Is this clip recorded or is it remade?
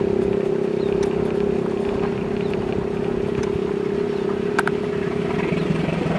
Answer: recorded